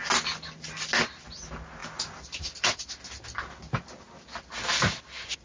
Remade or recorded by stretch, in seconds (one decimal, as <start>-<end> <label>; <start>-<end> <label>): 0.0-5.4 recorded